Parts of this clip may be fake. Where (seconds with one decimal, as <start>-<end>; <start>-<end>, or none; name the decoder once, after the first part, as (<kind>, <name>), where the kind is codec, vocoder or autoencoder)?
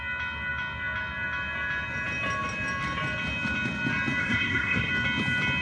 4.2-4.9 (codec, SNAC)